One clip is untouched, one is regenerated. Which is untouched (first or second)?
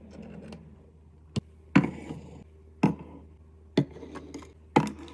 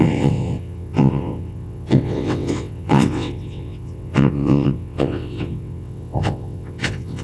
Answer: first